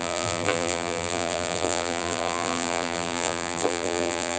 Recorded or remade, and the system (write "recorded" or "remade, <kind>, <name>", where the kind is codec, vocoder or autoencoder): remade, vocoder, BigVGAN v2